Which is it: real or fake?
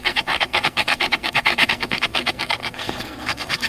fake